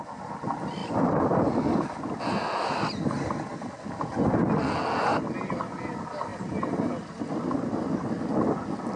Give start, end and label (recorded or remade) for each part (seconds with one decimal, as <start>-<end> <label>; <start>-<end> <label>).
0.0-9.0 recorded